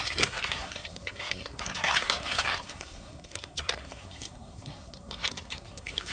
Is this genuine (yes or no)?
no